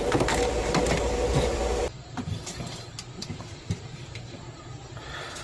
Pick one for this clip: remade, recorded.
remade